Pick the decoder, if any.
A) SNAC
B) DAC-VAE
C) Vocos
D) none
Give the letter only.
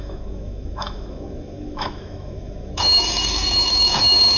B